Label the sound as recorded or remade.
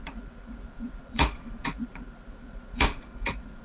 remade